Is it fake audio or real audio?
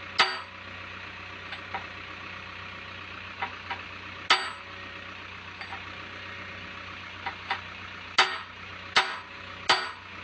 real